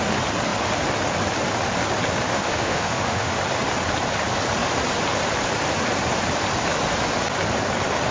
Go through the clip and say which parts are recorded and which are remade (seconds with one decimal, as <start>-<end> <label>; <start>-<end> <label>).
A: 0.0-2.3 recorded; 2.3-3.4 remade; 3.4-8.1 recorded